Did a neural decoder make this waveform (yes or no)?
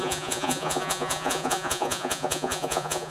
yes